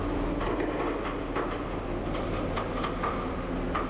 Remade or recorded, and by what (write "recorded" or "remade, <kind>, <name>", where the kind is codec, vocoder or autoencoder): recorded